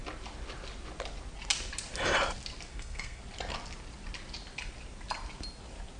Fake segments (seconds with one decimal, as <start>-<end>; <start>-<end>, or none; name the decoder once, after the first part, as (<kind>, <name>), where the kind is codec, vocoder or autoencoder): 2.7-3.2 (codec, SNAC)